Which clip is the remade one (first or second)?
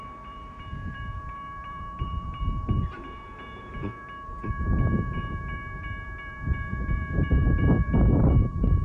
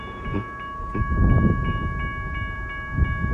first